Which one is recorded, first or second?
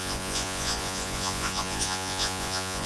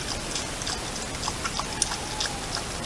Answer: second